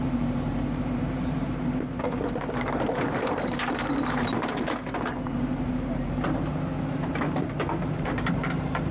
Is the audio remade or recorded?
remade